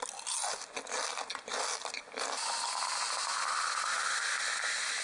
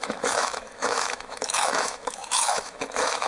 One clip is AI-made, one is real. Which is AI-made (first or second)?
second